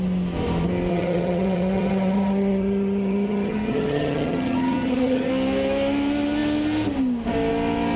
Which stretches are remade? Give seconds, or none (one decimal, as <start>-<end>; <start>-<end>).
0.9-5.3